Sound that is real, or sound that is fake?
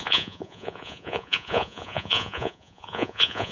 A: fake